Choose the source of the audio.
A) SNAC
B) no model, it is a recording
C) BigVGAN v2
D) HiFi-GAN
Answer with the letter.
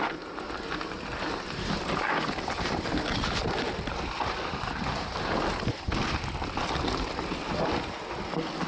B